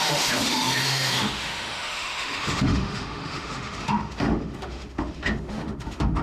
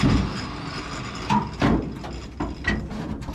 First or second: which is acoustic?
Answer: second